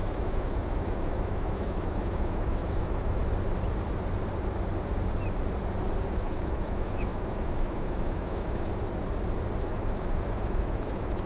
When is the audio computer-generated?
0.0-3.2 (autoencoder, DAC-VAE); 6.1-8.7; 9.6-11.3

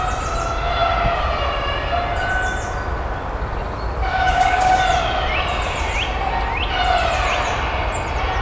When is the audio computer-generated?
4.1-4.8 (codec, DAC)

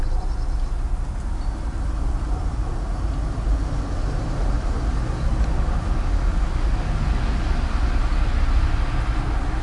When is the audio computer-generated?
none